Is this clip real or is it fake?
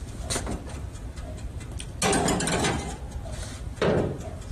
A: real